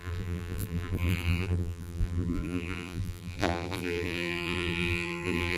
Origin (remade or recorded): remade